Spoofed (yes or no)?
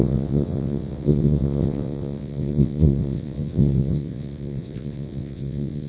yes